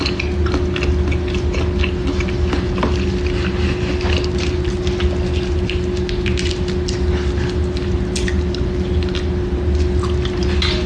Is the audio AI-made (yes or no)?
no